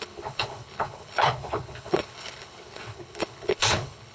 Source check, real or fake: fake